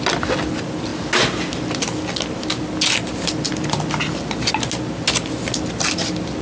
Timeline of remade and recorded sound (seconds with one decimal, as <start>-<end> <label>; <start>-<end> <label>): 0.0-6.4 recorded